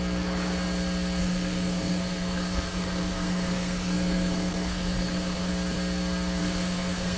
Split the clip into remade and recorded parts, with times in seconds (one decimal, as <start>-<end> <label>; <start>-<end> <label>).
0.0-1.2 recorded; 1.2-5.5 remade; 5.5-6.4 recorded; 6.4-7.2 remade